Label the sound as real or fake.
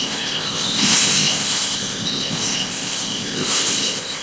fake